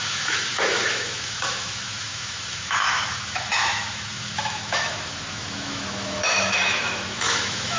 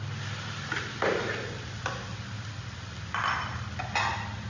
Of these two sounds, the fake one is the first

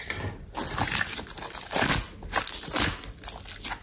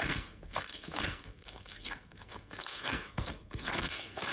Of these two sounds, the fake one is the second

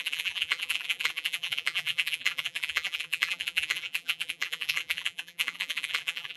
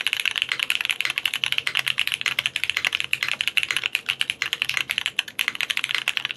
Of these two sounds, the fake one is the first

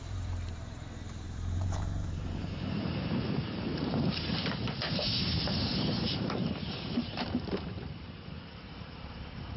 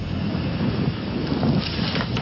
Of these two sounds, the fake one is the first